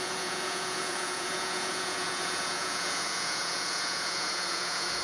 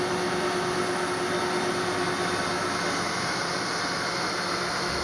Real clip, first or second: second